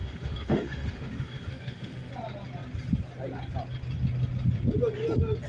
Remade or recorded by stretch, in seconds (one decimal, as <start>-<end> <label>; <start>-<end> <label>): 0.0-2.1 remade; 2.1-5.5 recorded